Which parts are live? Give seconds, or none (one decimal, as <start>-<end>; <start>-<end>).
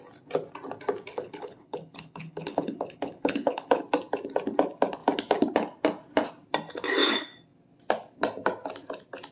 0.0-1.1; 3.8-9.3